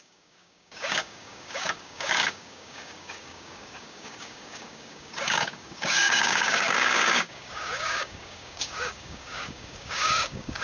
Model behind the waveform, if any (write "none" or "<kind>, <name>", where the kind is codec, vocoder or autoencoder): codec, DAC